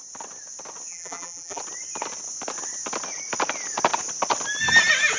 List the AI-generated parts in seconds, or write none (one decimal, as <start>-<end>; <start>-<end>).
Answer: 0.9-1.6